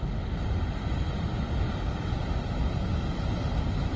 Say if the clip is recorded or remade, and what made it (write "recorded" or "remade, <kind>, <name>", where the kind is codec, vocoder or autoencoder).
recorded